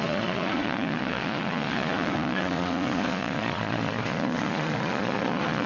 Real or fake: fake